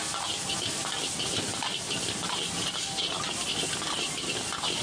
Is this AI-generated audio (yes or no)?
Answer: no